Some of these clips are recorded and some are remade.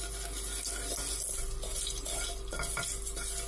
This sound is recorded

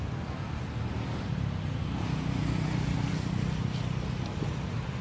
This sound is recorded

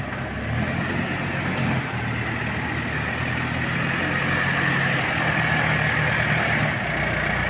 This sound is recorded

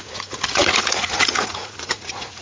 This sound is remade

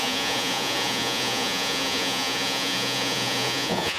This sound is remade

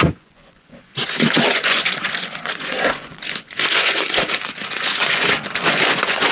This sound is remade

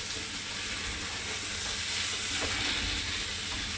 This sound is recorded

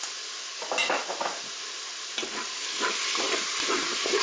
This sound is recorded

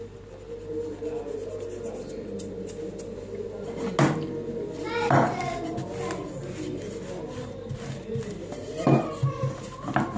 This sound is recorded